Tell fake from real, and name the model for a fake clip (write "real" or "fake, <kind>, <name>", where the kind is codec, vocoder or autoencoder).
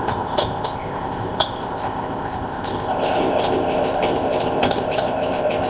fake, codec, ZipCodec